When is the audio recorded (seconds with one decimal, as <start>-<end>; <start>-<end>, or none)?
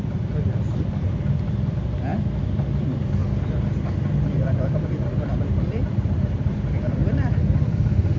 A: 3.2-4.4